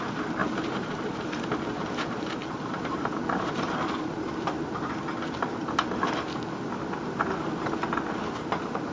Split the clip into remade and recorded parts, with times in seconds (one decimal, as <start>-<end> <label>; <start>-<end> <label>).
0.0-0.4 recorded; 0.4-1.0 remade; 1.0-2.4 recorded; 2.4-4.2 remade; 4.2-8.9 recorded